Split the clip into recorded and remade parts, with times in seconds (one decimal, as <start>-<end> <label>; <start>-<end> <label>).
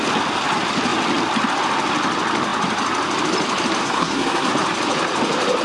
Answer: 0.0-3.8 recorded; 3.8-4.5 remade; 4.5-5.6 recorded